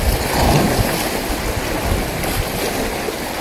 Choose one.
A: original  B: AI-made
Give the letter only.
A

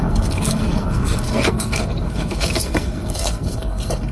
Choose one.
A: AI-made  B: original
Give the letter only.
A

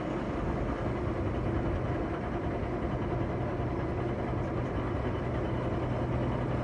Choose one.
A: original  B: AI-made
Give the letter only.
A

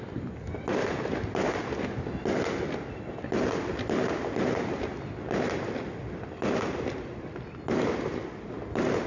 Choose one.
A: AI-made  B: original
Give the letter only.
B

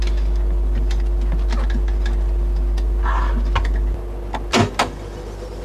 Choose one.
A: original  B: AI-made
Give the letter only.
A